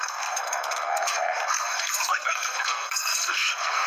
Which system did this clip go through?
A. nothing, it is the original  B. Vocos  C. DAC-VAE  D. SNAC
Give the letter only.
D